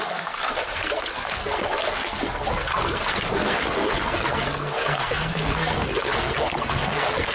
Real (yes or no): no